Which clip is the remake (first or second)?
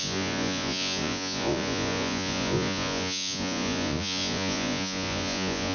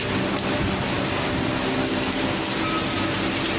first